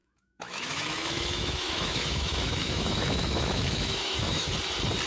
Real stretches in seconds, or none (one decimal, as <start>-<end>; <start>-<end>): 4.5-5.1